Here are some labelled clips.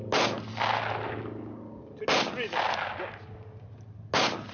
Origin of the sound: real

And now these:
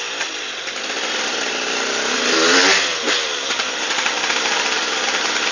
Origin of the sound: real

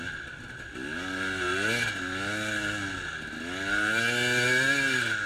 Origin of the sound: real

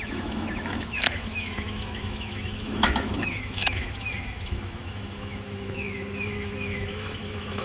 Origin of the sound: fake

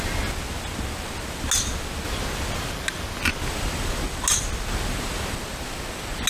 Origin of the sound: real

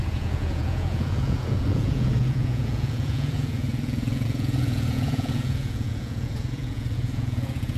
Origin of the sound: fake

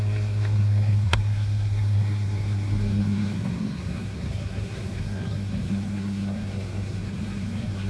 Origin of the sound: fake